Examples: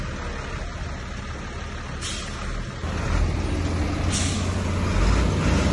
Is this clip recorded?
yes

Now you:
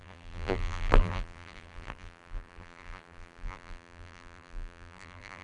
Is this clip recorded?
no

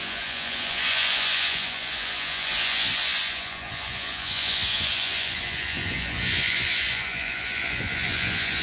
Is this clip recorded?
no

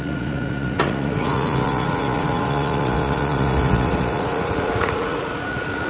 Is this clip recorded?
no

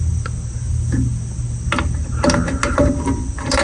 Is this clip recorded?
yes